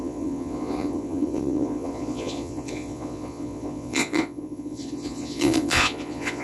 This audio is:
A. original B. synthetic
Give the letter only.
B